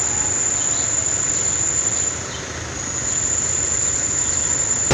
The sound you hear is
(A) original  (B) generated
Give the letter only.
A